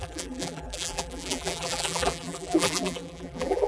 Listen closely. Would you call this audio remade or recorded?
remade